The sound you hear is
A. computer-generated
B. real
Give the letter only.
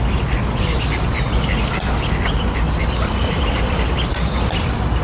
B